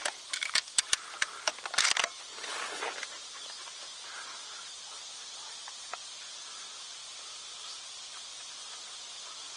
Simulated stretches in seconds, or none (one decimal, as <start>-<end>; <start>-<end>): 2.3-2.8